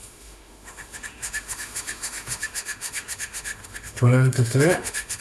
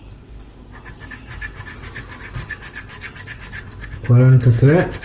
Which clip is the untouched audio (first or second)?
second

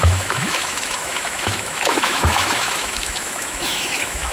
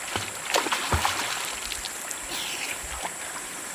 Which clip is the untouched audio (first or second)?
second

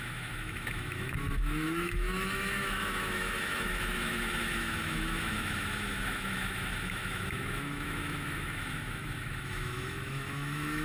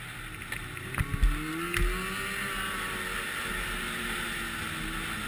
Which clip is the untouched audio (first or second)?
second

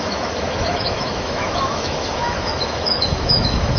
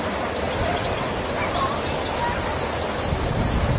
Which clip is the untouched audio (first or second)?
second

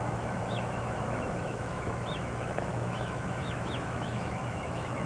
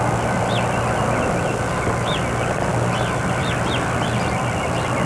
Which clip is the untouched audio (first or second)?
second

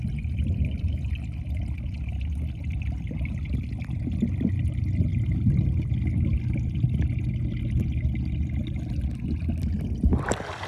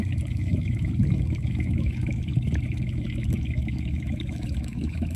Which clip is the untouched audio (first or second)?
first